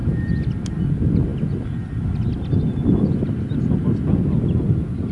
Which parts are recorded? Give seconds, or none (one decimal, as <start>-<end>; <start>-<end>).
0.0-5.1